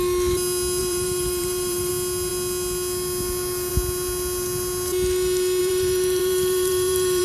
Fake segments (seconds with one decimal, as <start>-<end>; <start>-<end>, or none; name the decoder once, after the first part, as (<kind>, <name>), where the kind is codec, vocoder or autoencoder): 0.8-1.9 (vocoder, BigVGAN v2); 5.6-7.2